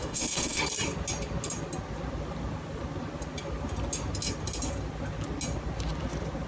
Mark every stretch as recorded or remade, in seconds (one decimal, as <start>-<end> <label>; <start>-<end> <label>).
0.0-0.6 remade; 0.6-6.5 recorded